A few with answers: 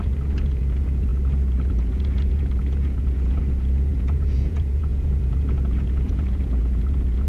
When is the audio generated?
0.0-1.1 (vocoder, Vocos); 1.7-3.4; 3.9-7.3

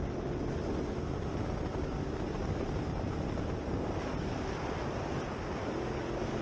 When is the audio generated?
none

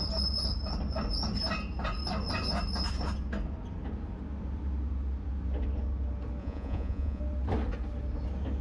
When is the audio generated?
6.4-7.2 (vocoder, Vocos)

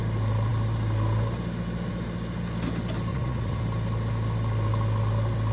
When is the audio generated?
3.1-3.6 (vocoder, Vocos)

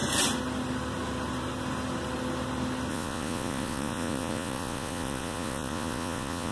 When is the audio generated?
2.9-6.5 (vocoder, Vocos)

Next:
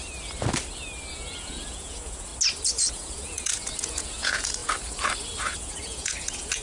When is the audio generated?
1.1-2.3 (vocoder, Vocos); 2.9-4.6; 5.4-6.6